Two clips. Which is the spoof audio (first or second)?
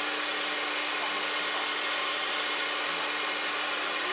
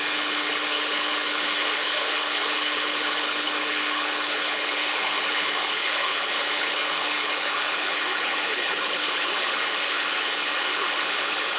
second